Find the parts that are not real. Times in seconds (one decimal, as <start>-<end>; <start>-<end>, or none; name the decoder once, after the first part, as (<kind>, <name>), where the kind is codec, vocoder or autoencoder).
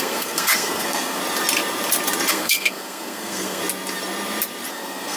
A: 0.0-1.2 (codec, SNAC); 2.3-3.6; 4.7-5.2